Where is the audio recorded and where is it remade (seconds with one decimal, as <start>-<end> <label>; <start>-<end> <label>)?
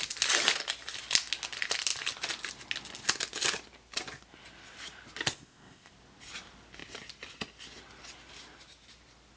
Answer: 0.0-5.3 recorded; 5.3-5.9 remade; 5.9-9.4 recorded